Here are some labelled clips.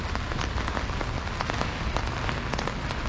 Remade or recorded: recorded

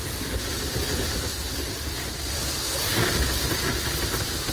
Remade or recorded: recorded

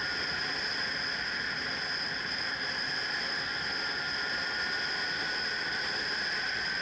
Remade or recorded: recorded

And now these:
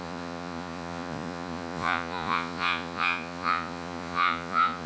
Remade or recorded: remade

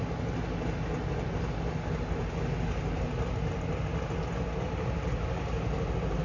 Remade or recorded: recorded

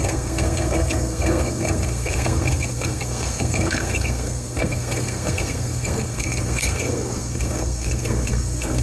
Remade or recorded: remade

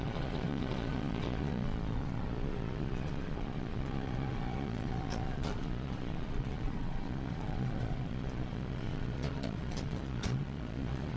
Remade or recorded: remade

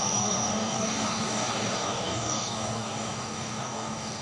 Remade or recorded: remade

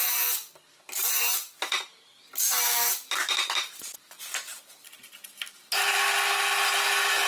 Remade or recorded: recorded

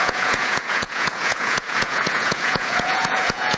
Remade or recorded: remade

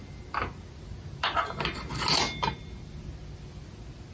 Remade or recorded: recorded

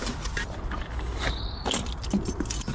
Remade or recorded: recorded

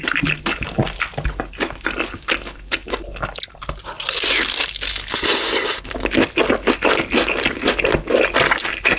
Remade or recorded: recorded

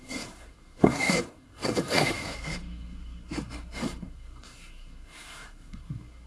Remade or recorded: remade